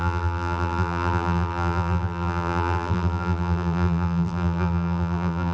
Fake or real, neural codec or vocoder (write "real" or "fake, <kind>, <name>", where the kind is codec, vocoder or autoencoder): fake, vocoder, BigVGAN v2